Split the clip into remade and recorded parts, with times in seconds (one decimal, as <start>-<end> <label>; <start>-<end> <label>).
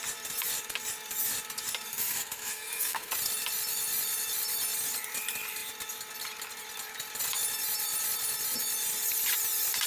0.0-1.9 recorded; 1.9-3.1 remade; 3.1-9.9 recorded